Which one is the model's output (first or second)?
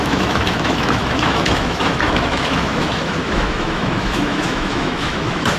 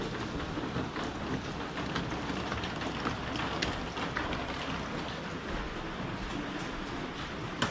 first